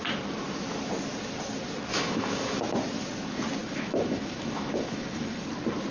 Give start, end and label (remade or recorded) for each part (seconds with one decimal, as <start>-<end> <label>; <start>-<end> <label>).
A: 0.0-1.9 recorded; 1.9-2.6 remade; 2.6-3.6 recorded; 3.6-5.4 remade; 5.4-5.9 recorded